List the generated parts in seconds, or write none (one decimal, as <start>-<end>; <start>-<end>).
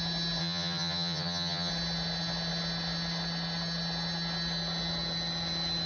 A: 0.4-1.7